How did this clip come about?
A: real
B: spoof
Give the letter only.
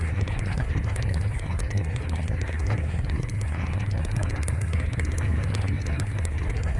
B